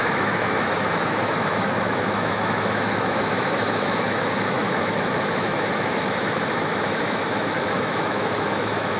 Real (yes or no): no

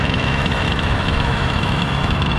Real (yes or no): no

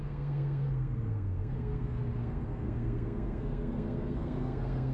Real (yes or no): no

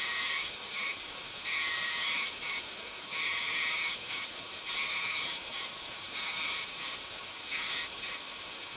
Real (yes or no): no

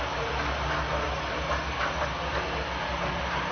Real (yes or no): yes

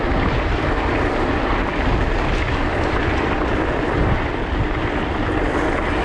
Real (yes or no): yes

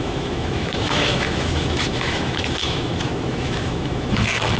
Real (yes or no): no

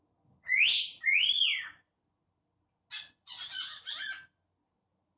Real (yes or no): yes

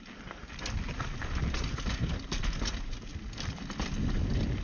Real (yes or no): yes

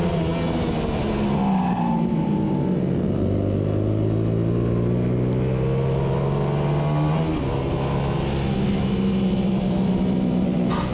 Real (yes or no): yes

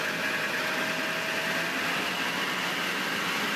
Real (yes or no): yes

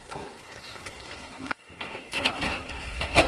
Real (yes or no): no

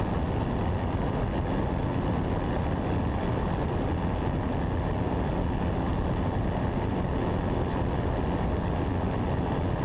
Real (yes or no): yes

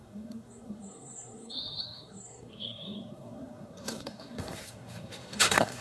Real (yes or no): no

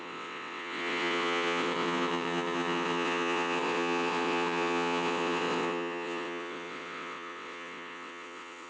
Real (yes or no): no